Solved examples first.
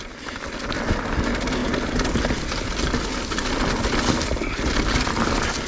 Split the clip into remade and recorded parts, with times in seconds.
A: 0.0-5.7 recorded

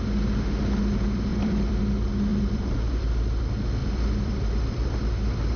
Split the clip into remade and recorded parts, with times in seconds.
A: 0.0-1.3 recorded; 1.3-1.8 remade; 1.8-2.3 recorded; 2.3-3.4 remade; 3.4-3.8 recorded; 3.8-5.6 remade

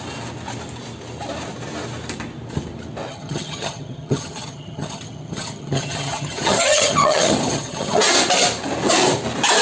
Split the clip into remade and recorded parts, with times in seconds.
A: 0.0-3.1 recorded; 3.1-8.0 remade; 8.0-9.6 recorded